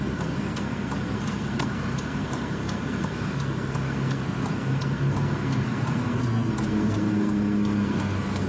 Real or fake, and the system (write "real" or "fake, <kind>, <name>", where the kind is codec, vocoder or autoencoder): fake, codec, SNAC